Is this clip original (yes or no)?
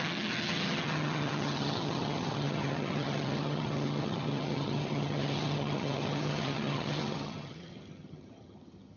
no